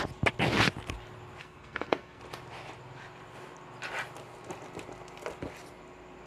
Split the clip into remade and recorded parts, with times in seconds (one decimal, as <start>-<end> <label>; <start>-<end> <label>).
0.0-1.4 recorded; 1.4-2.2 remade; 2.2-6.3 recorded